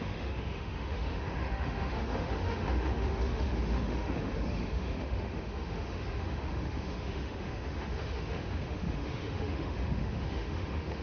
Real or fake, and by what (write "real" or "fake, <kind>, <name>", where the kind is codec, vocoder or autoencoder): fake, autoencoder, DAC-VAE